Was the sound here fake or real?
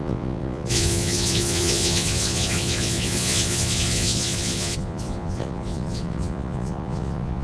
fake